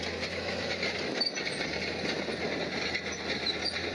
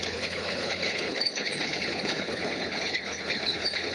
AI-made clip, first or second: second